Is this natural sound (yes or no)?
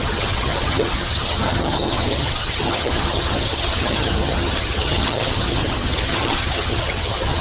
no